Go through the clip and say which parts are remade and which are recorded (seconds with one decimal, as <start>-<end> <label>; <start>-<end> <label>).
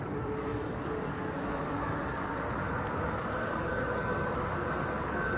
0.0-5.4 remade